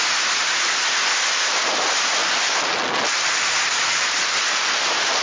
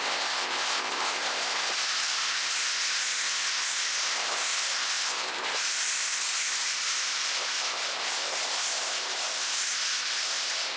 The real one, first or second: first